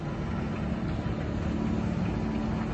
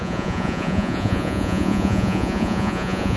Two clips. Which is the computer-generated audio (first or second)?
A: second